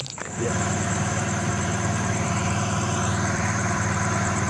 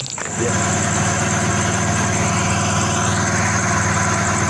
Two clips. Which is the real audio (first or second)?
second